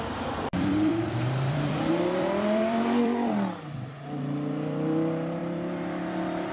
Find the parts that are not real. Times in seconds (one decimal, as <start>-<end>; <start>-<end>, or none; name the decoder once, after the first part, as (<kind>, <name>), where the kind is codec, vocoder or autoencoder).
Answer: 0.0-6.5 (vocoder, BigVGAN v2)